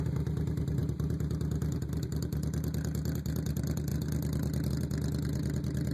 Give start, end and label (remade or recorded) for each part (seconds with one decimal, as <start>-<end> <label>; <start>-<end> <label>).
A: 0.0-5.9 recorded